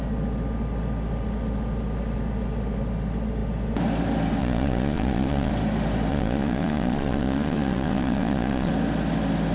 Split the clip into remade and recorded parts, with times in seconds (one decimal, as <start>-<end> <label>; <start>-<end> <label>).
0.0-4.4 recorded; 4.4-5.5 remade; 5.5-6.1 recorded; 6.1-8.7 remade; 8.7-9.5 recorded